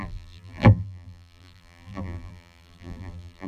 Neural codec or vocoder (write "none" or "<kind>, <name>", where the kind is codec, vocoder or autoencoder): vocoder, BigVGAN v2